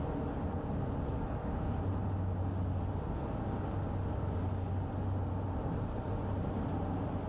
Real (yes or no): yes